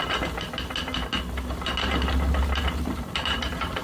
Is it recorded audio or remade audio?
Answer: recorded